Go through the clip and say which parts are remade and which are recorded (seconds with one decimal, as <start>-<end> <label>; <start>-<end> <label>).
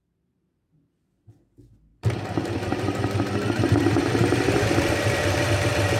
0.0-1.9 recorded; 1.9-5.5 remade; 5.5-6.0 recorded